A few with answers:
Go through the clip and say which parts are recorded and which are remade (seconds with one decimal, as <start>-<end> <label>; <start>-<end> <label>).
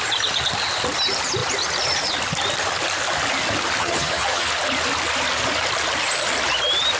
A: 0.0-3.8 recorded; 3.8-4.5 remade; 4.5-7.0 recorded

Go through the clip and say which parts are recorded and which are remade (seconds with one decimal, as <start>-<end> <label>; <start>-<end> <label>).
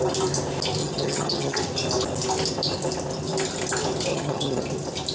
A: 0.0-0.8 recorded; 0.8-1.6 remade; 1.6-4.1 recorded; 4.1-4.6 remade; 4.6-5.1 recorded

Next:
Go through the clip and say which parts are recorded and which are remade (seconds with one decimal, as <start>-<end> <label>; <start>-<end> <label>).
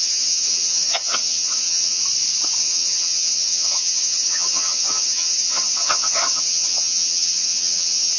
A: 0.0-2.0 remade; 2.0-2.6 recorded; 2.6-8.2 remade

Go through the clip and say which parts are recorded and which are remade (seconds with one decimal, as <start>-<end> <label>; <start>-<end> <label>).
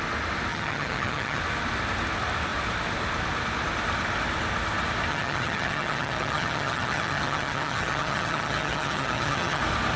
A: 0.0-0.5 recorded; 0.5-1.4 remade; 1.4-5.1 recorded; 5.1-9.6 remade; 9.6-10.0 recorded